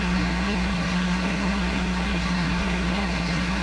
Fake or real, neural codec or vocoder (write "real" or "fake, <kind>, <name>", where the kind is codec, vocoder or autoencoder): fake, codec, SNAC